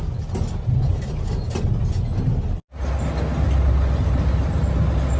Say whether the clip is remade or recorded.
recorded